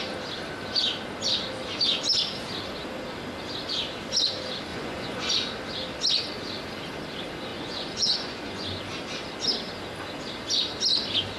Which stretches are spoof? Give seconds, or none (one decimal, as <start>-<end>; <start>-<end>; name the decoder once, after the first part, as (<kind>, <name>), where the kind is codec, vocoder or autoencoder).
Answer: 4.7-5.3 (vocoder, Vocos); 7.5-8.8